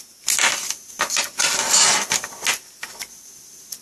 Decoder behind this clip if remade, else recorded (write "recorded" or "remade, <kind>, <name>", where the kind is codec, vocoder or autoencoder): recorded